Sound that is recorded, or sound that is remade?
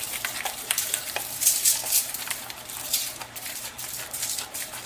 remade